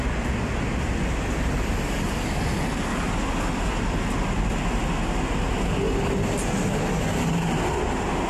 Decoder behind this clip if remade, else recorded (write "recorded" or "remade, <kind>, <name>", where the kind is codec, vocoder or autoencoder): recorded